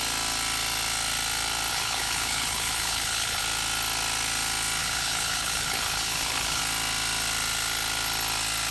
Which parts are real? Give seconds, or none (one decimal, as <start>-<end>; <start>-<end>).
0.0-1.7; 3.4-4.8; 6.6-8.7